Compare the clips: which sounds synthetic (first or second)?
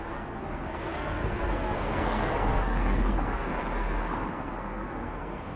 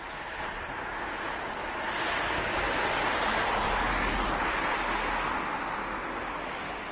first